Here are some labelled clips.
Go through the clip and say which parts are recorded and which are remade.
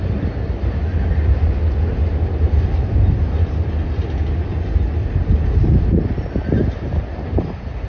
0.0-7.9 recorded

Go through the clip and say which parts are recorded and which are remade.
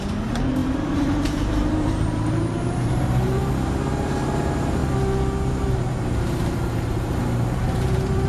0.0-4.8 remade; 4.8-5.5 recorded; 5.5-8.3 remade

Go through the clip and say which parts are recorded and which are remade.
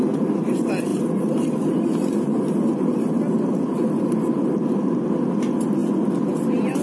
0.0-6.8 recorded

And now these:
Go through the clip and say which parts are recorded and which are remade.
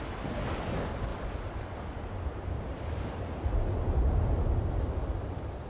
0.0-5.7 recorded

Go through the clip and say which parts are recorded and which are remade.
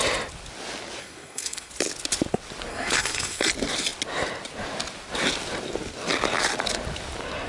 0.0-1.0 recorded; 1.0-1.7 remade; 1.7-2.7 recorded; 2.7-3.5 remade; 3.5-7.5 recorded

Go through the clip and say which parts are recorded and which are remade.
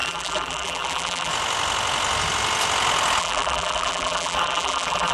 0.0-1.3 remade; 1.3-3.2 recorded; 3.2-5.1 remade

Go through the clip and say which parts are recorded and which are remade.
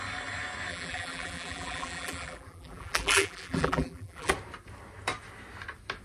0.0-0.7 recorded; 0.7-4.3 remade; 4.3-6.0 recorded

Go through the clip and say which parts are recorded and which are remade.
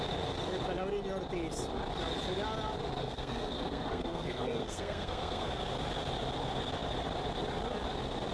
0.0-3.0 recorded; 3.0-5.6 remade; 5.6-8.3 recorded